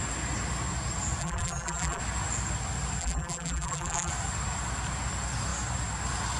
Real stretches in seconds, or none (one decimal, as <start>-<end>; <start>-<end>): 0.0-1.2; 2.0-3.0; 4.1-6.4